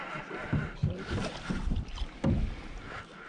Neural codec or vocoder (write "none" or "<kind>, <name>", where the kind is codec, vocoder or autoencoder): none